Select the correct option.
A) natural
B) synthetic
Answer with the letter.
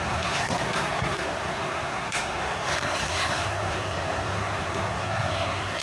B